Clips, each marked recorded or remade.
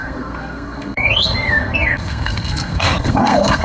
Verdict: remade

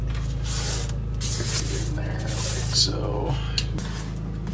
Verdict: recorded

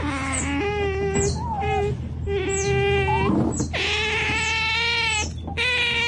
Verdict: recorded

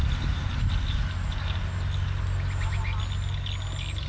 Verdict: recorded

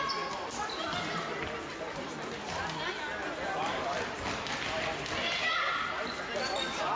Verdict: recorded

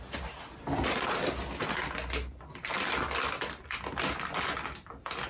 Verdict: recorded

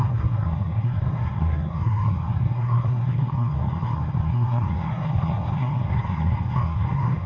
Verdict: remade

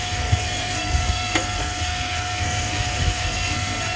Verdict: remade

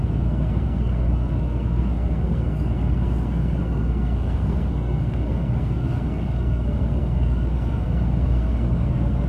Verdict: remade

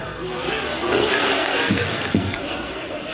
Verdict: remade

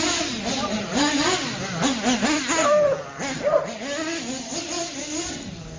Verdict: recorded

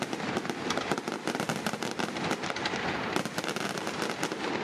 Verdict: recorded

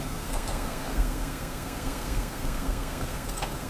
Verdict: remade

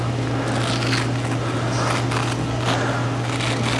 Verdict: recorded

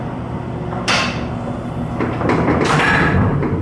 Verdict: recorded